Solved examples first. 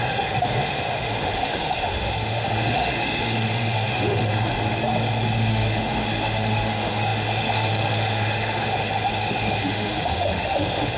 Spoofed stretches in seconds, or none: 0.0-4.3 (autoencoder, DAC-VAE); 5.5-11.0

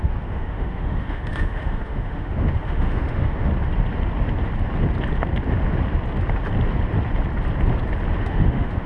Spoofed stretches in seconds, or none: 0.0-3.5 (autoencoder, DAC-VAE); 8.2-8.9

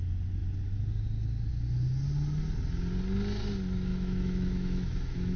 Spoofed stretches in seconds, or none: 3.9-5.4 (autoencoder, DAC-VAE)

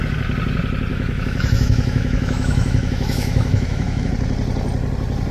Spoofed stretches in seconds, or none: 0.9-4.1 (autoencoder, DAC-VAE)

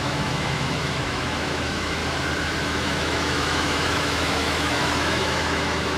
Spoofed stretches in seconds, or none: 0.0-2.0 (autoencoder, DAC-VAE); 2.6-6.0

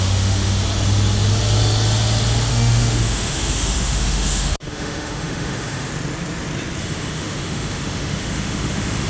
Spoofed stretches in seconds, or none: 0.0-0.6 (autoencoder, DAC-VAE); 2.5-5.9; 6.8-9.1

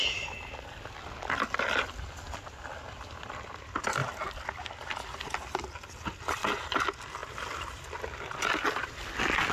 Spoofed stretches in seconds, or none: none

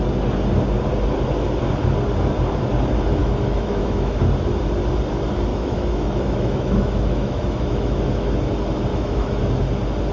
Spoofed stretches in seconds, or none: 3.2-4.2 (autoencoder, DAC-VAE); 5.5-8.3; 8.9-9.4